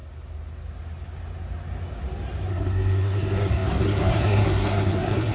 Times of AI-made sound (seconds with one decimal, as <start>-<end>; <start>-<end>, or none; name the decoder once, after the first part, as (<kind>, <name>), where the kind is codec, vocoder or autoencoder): 2.5-5.3 (codec, SNAC)